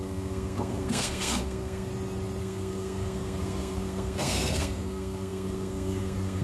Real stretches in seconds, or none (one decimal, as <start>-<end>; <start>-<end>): 1.9-2.4